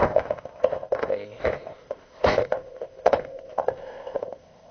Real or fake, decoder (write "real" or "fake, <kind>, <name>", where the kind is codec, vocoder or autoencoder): fake, codec, ZipCodec